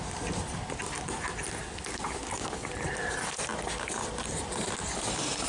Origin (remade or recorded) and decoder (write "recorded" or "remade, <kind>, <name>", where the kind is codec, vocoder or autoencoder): recorded